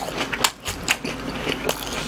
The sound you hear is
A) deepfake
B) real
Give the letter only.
B